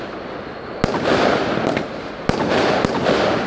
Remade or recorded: recorded